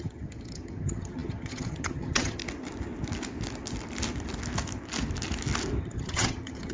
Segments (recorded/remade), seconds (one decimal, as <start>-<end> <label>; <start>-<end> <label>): 0.0-2.4 remade; 2.4-5.8 recorded; 5.8-6.7 remade